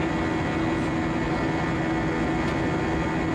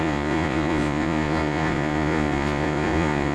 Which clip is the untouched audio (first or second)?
first